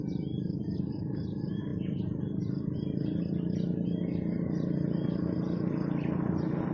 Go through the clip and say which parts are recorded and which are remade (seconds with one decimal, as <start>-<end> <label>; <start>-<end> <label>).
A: 0.0-6.7 recorded